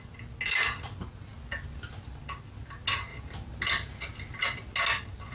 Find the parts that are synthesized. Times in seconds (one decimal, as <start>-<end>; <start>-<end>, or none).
none

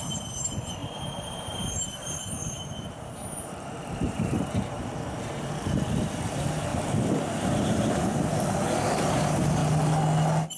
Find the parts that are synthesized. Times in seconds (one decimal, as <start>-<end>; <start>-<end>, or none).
0.0-6.7; 7.4-8.1; 9.1-9.6

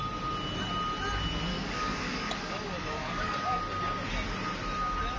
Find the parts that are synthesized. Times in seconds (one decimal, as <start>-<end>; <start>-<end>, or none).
1.5-3.6